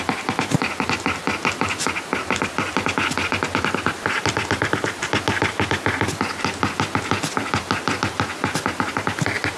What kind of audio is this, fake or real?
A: real